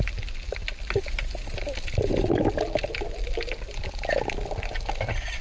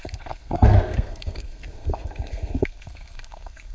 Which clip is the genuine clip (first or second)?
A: first